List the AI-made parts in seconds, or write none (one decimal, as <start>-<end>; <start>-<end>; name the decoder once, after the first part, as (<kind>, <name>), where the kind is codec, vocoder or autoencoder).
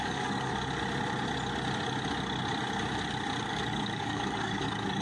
0.0-0.5 (codec, DAC); 3.5-5.0